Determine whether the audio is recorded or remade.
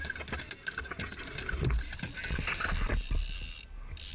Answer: recorded